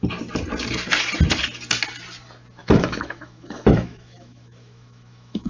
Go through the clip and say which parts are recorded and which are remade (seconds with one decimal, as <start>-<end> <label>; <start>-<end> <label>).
0.0-2.6 recorded; 2.6-5.5 remade